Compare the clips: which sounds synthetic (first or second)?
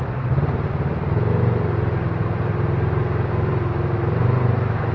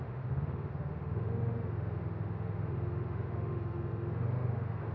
second